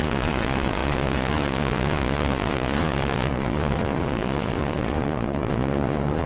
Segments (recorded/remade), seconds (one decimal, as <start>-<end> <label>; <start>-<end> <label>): 0.0-6.3 remade

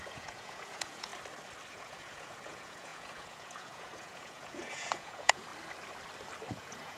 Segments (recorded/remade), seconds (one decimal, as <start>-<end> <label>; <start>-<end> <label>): 0.0-1.1 remade; 1.1-1.7 recorded; 1.7-5.5 remade; 5.5-6.5 recorded; 6.5-7.0 remade

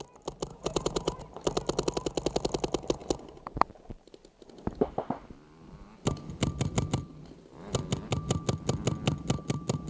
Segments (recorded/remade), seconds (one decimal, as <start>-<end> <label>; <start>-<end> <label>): 0.0-0.5 recorded; 0.5-1.2 remade; 1.2-9.9 recorded

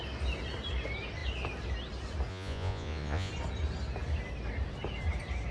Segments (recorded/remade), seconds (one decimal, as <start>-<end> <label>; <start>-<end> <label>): 0.0-2.3 recorded; 2.3-3.3 remade; 3.3-5.5 recorded

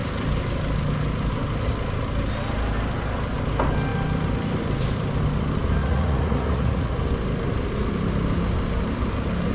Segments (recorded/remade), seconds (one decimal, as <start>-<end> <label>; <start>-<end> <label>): 0.0-5.8 recorded; 5.8-6.9 remade; 6.9-9.5 recorded

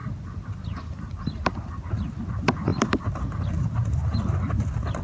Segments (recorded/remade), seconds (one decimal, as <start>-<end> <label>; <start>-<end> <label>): 0.0-5.0 recorded